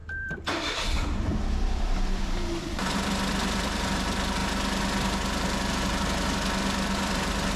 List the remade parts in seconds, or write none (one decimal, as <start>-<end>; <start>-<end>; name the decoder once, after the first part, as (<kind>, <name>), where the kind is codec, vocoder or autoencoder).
0.0-4.4 (vocoder, BigVGAN v2); 7.1-7.6